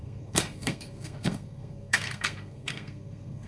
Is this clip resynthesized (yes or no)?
yes